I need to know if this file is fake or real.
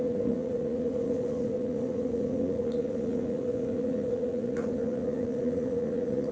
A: fake